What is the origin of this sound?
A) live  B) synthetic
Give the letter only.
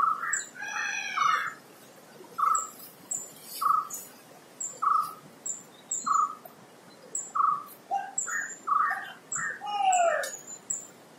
A